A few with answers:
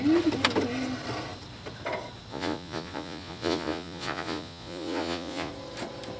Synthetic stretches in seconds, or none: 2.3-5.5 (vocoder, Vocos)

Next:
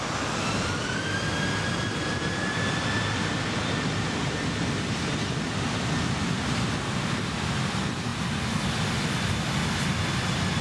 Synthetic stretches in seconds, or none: none